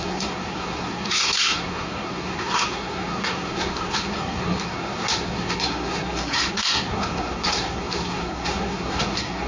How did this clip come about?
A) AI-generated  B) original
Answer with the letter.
A